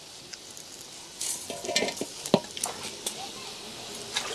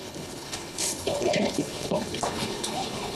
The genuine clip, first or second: first